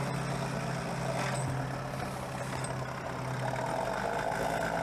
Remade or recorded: recorded